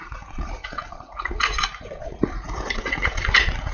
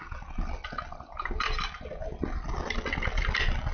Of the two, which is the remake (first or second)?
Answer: first